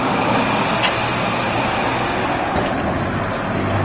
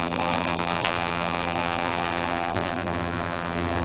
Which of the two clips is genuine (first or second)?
first